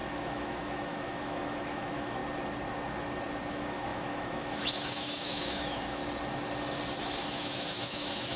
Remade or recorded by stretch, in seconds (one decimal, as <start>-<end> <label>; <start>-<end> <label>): 0.0-2.2 remade; 2.2-3.5 recorded; 3.5-6.0 remade; 6.0-7.0 recorded; 7.0-8.4 remade